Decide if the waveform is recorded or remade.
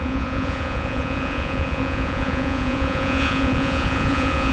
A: remade